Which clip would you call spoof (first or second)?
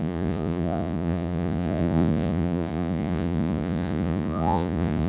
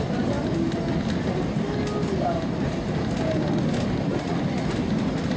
first